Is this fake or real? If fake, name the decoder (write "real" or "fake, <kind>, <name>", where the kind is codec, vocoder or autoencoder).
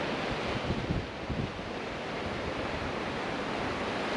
real